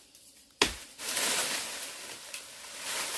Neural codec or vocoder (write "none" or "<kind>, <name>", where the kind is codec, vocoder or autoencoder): none